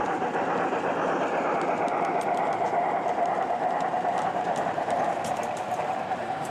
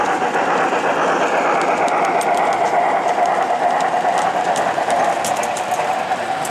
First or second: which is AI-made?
first